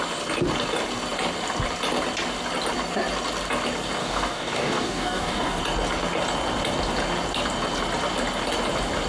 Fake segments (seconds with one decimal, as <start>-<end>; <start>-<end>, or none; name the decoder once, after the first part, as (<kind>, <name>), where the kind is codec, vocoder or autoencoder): 4.0-5.6 (codec, DAC)